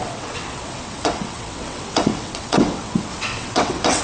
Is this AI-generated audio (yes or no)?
yes